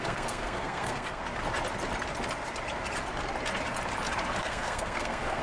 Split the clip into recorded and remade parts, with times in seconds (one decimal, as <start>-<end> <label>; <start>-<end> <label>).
0.0-1.2 remade; 1.2-4.4 recorded; 4.4-5.4 remade